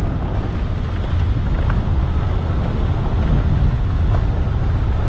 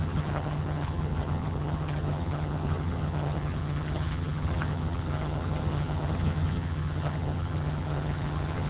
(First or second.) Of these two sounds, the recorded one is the first